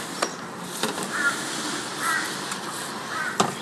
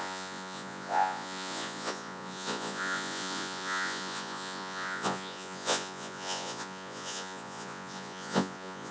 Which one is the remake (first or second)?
second